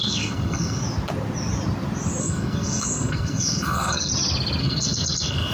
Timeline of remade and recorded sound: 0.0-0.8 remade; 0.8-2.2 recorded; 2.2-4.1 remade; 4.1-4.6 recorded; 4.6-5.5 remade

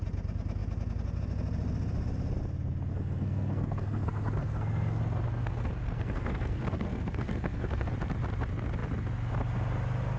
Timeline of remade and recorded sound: 0.0-2.9 recorded; 2.9-5.0 remade; 5.0-5.4 recorded; 5.4-7.9 remade; 7.9-10.2 recorded

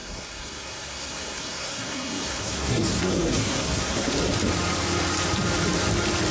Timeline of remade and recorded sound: 0.0-4.1 remade; 4.1-6.3 recorded

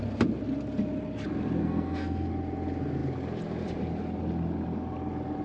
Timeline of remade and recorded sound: 0.0-1.6 recorded; 1.6-2.3 remade; 2.3-5.4 recorded

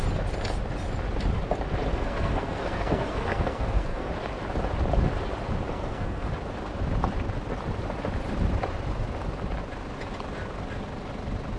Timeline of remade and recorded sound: 0.0-1.9 recorded; 1.9-4.1 remade; 4.1-5.7 recorded; 5.7-6.3 remade; 6.3-11.6 recorded